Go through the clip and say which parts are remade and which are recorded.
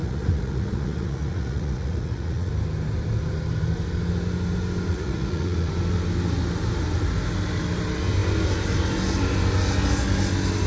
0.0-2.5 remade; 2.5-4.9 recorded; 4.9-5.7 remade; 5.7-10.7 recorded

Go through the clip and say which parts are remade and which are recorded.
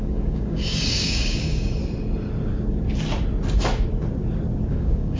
0.0-1.8 remade; 1.8-4.7 recorded; 4.7-5.2 remade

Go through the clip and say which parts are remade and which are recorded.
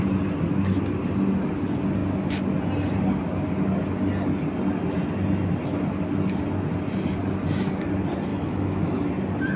0.0-8.3 recorded; 8.3-9.1 remade; 9.1-9.6 recorded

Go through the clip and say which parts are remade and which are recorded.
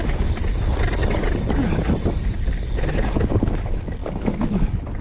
0.0-5.0 recorded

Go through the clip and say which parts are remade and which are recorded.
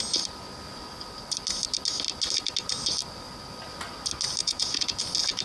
0.0-4.4 recorded; 4.4-5.0 remade; 5.0-5.4 recorded